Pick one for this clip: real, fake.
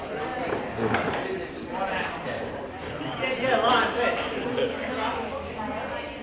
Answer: real